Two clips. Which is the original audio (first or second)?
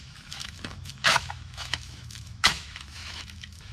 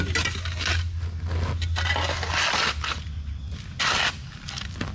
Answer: second